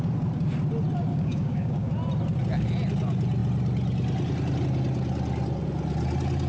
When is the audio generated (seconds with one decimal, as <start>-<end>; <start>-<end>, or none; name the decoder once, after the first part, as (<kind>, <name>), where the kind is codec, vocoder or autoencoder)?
1.1-1.9 (codec, DAC)